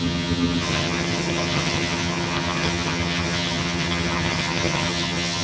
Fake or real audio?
fake